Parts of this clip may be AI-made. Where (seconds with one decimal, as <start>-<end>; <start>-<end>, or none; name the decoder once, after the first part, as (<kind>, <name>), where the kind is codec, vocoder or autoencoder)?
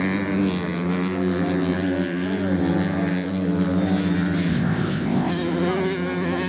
4.5-5.3 (codec, ZipCodec)